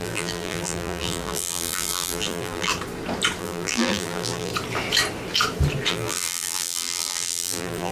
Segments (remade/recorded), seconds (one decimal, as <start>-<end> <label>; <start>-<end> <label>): 0.0-2.7 remade; 2.7-3.4 recorded; 3.4-4.5 remade; 4.5-5.9 recorded; 5.9-7.9 remade